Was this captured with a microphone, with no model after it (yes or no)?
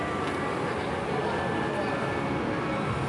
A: yes